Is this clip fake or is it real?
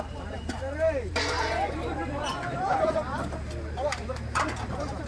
fake